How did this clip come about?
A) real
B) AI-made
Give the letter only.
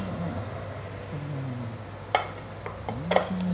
A